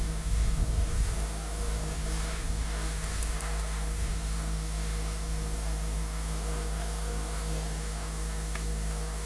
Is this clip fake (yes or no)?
yes